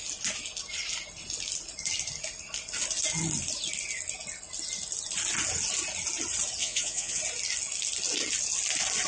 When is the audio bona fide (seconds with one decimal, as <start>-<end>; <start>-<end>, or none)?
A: 0.0-6.6; 7.2-9.1